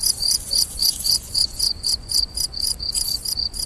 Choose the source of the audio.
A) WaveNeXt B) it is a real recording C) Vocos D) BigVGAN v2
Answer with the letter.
C